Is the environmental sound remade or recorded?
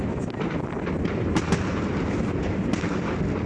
recorded